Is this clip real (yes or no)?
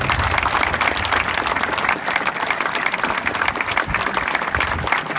yes